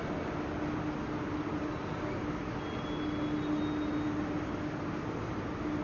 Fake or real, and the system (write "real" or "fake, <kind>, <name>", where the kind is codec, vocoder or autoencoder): real